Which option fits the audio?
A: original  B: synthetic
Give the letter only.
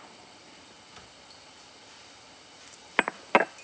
A